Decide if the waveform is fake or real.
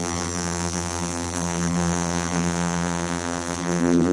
fake